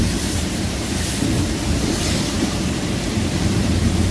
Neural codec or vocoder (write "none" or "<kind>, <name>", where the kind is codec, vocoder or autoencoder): vocoder, BigVGAN v2